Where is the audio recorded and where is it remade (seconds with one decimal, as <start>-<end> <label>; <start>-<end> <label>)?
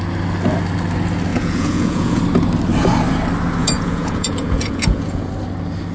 0.0-1.3 recorded; 1.3-2.2 remade; 2.2-3.6 recorded; 3.6-5.3 remade; 5.3-5.9 recorded